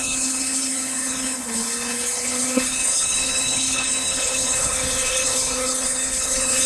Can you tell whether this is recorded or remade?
remade